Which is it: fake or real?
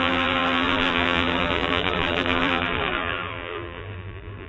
fake